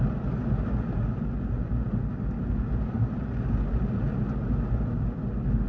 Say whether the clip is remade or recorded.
recorded